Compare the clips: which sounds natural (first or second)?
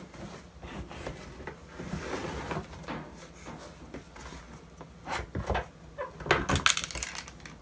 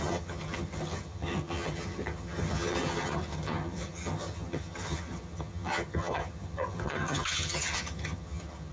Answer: first